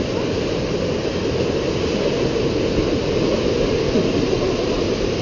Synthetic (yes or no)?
no